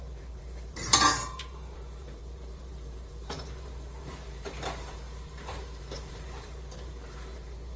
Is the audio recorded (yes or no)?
no